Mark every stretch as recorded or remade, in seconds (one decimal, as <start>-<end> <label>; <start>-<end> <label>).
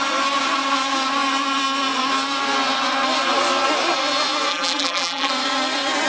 0.0-4.5 recorded; 4.5-5.3 remade; 5.3-6.1 recorded